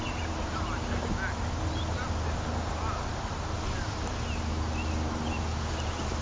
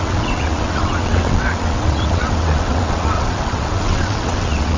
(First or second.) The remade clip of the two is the second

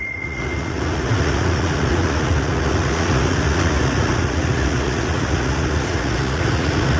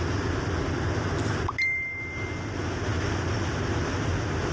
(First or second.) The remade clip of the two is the first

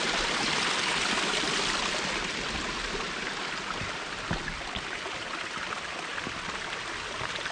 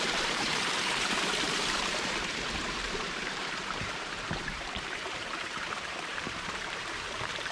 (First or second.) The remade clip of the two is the second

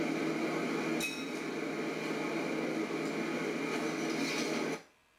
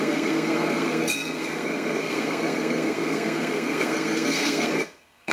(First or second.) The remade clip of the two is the second